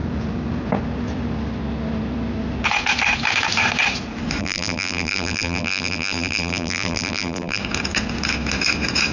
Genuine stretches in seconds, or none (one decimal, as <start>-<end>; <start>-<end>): 0.0-4.4; 7.6-9.1